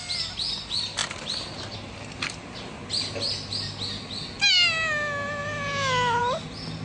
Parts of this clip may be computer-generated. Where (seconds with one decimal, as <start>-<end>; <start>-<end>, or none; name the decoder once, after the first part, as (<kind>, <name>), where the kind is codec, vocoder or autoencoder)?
none